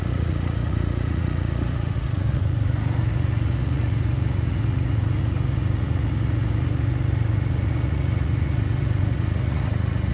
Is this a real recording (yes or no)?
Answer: no